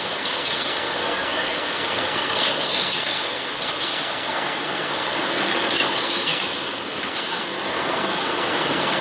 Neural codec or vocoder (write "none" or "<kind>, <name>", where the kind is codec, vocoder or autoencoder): codec, SNAC